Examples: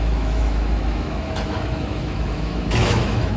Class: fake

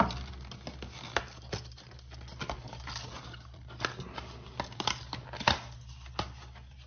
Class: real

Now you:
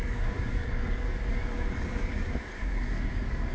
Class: fake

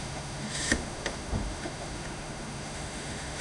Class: fake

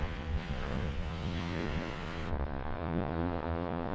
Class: fake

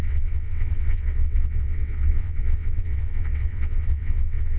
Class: fake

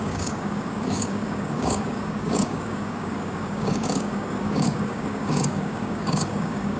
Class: fake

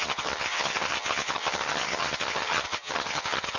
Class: fake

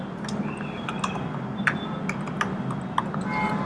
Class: real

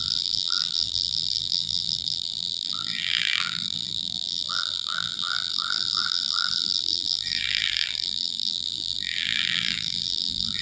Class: fake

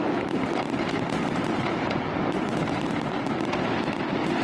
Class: fake